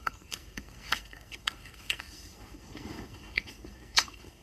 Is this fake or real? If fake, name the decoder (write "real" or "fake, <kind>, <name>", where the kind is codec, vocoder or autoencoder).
fake, codec, SNAC